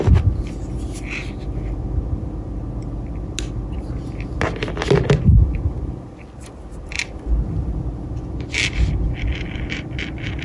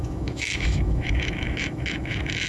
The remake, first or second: second